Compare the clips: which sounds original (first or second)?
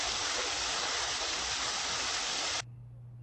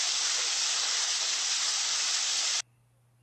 second